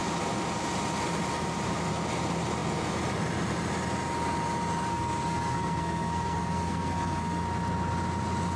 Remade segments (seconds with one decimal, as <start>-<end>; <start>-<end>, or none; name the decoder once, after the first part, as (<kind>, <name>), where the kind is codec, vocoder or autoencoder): 4.9-7.4 (codec, SNAC)